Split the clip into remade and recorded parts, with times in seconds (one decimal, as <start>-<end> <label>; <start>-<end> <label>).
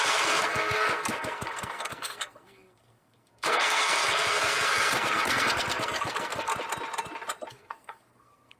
0.0-6.5 remade; 6.5-7.5 recorded; 7.5-8.6 remade